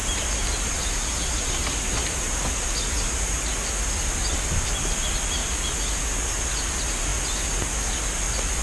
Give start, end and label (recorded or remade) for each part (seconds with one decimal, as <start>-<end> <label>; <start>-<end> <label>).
0.0-3.7 remade; 3.7-5.4 recorded; 5.4-6.0 remade; 6.0-8.6 recorded